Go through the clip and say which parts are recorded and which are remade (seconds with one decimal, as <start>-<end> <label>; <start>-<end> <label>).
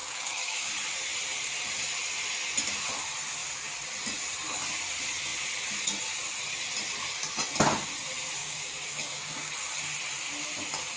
0.0-0.7 remade; 0.7-8.4 recorded; 8.4-9.5 remade; 9.5-11.0 recorded